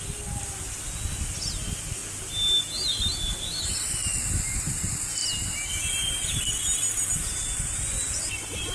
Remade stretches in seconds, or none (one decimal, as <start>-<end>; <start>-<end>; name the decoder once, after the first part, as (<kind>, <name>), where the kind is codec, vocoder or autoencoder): none